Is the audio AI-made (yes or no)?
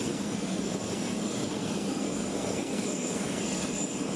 yes